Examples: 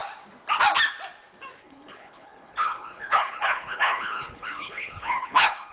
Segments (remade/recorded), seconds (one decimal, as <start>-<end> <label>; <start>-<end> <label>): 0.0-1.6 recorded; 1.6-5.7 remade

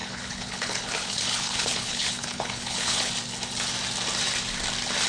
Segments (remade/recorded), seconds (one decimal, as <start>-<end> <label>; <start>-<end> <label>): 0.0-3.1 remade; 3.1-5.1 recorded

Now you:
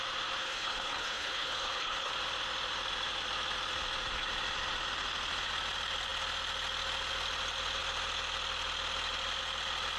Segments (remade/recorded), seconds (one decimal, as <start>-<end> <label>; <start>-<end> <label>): 0.0-0.4 recorded; 0.4-2.1 remade; 2.1-10.0 recorded